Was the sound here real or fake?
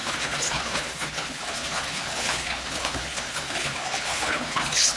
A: fake